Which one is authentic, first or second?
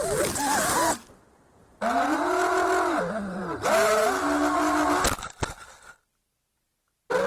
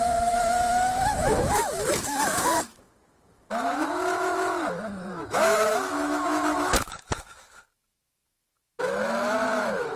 first